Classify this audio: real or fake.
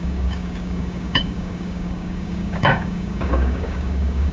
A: fake